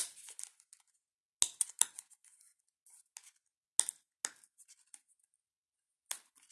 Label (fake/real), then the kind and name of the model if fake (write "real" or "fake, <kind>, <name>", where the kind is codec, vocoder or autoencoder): real